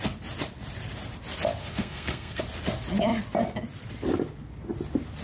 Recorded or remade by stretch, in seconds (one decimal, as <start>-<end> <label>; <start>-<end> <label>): 0.0-1.6 recorded; 1.6-2.4 remade; 2.4-5.2 recorded